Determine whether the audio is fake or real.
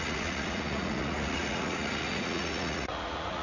fake